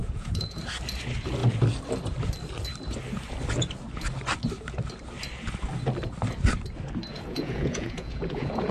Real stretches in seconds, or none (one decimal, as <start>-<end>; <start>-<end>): 0.6-7.1